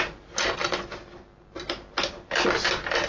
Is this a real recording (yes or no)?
yes